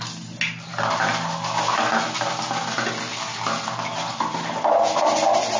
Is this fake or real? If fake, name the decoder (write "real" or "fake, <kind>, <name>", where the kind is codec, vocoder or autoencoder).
real